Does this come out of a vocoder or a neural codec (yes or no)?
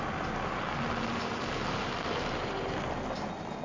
no